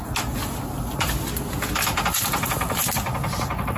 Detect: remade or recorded recorded